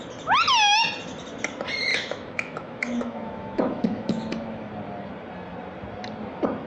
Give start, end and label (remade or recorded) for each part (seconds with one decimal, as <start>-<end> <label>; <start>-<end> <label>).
0.0-1.9 recorded; 1.9-4.7 remade; 4.7-6.7 recorded